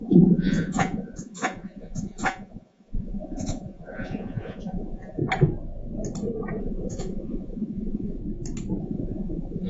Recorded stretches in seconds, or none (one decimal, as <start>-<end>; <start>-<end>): 5.2-6.6; 8.2-8.8